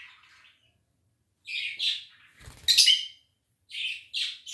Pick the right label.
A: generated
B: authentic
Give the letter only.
B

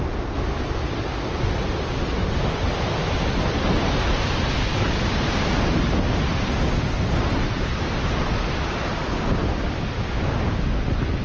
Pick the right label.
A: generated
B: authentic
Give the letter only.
B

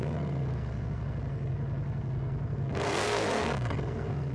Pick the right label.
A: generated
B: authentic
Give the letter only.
A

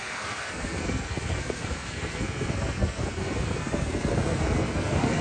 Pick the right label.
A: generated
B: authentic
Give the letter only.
A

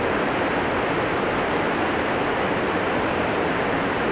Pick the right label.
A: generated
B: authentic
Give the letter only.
B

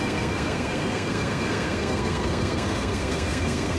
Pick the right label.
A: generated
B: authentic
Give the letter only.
A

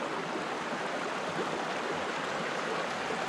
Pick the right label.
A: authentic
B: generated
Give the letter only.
A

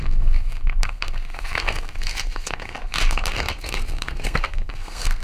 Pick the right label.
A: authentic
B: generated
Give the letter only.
B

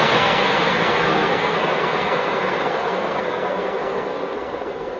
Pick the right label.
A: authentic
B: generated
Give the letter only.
B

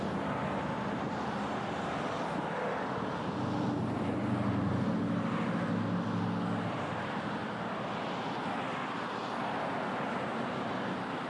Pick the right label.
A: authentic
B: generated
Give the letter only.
A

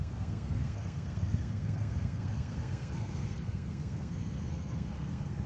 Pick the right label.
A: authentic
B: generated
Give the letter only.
B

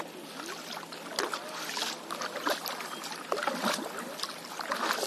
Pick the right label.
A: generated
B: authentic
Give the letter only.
B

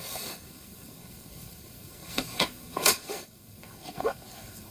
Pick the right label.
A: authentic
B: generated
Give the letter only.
B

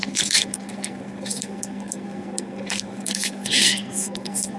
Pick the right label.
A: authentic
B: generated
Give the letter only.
B